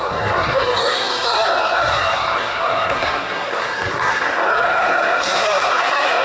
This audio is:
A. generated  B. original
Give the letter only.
A